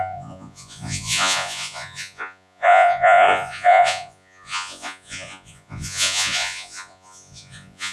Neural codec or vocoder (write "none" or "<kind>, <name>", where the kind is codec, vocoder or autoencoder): vocoder, Vocos